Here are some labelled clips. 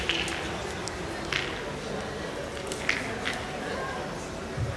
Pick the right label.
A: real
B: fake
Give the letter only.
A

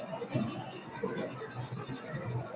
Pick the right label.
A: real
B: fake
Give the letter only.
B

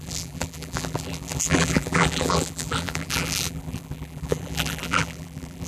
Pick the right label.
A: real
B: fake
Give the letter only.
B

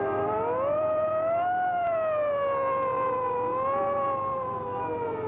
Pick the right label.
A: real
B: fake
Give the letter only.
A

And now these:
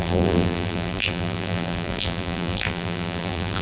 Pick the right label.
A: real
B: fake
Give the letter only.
B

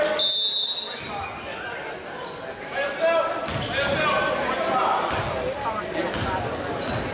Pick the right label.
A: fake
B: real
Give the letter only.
B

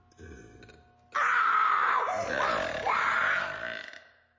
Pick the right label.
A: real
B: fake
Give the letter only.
A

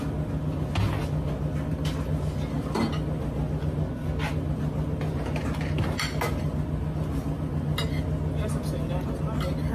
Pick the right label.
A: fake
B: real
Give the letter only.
B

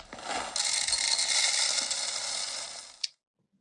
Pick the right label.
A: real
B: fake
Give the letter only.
A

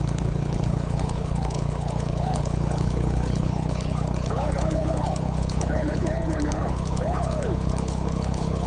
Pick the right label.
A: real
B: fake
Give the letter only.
B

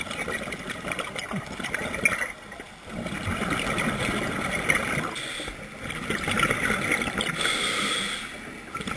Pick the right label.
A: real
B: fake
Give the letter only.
A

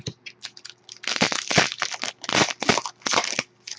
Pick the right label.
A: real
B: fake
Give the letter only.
A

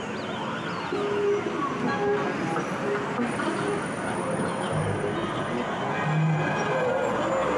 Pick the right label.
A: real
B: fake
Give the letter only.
A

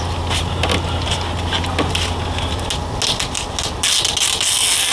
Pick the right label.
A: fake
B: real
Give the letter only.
B